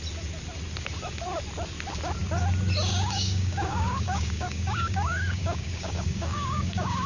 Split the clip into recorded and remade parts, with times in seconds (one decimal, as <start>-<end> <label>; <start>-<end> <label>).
0.0-2.9 recorded; 2.9-7.1 remade